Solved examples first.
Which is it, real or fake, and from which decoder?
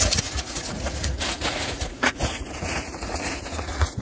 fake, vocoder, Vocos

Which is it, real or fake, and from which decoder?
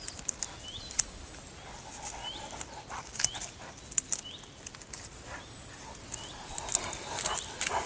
real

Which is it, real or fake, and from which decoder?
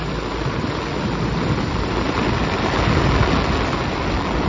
real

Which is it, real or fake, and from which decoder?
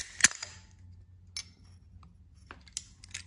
real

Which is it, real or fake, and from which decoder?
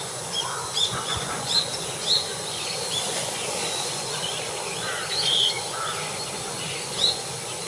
fake, vocoder, Vocos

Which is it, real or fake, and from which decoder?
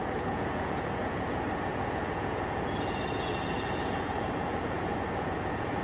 fake, vocoder, Vocos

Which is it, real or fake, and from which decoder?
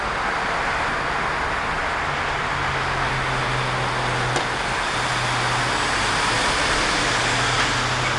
real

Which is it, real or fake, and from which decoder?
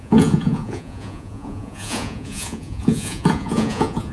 fake, vocoder, Vocos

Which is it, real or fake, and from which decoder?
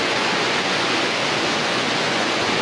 fake, vocoder, Vocos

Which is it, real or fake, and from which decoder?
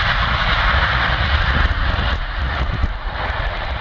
fake, vocoder, Vocos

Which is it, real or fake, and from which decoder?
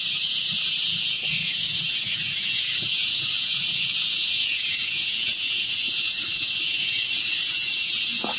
fake, vocoder, Vocos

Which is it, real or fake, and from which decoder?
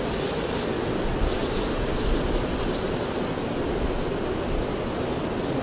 real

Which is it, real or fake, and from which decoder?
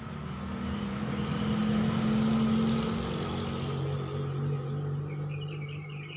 real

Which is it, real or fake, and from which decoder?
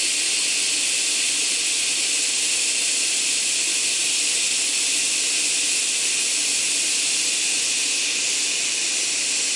real